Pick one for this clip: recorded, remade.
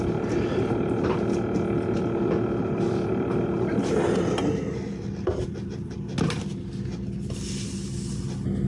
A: recorded